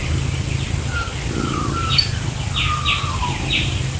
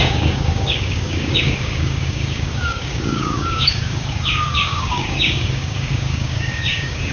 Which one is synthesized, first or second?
second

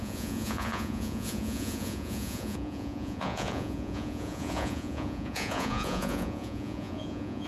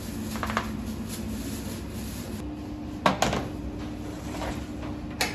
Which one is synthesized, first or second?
first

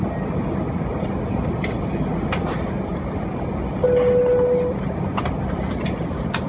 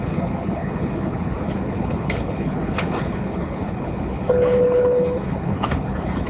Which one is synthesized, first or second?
second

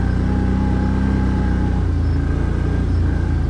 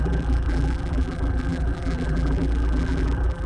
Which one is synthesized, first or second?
second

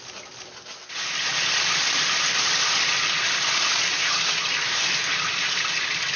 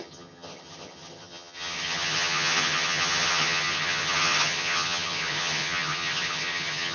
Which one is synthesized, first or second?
second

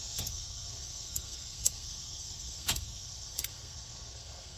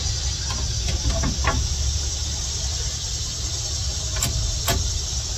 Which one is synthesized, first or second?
first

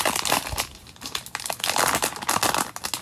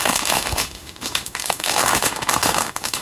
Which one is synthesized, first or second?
second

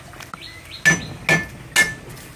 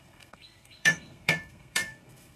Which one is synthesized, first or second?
second